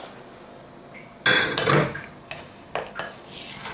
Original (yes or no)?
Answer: yes